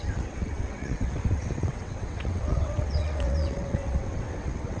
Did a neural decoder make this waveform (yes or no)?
yes